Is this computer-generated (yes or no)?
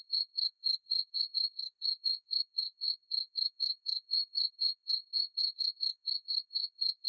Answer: yes